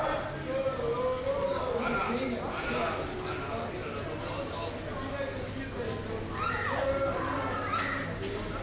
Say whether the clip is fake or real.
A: real